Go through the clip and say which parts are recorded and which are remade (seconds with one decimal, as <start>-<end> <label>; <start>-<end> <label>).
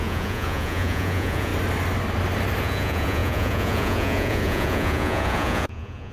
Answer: 0.0-1.5 remade; 1.5-2.6 recorded; 2.6-6.1 remade